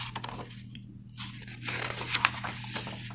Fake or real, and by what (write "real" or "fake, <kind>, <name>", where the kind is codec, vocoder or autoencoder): real